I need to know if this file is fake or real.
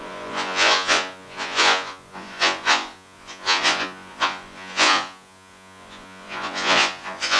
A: fake